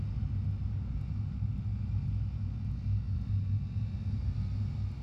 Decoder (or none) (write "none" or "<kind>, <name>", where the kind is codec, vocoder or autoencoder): none